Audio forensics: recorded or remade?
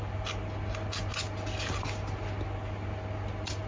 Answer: recorded